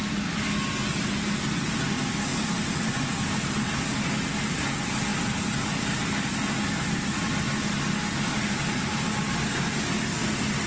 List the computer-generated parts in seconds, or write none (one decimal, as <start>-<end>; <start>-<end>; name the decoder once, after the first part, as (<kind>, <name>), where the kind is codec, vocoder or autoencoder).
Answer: none